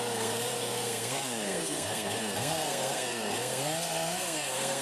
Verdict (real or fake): fake